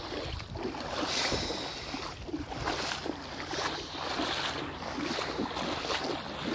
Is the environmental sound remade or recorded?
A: recorded